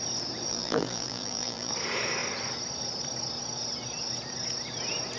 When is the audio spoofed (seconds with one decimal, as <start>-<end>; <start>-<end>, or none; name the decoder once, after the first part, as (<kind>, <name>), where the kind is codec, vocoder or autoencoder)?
0.5-1.7 (vocoder, BigVGAN v2)